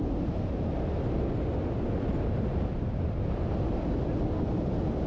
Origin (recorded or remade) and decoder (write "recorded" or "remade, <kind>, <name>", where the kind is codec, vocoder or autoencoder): recorded